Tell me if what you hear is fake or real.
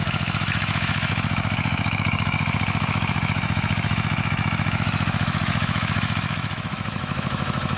fake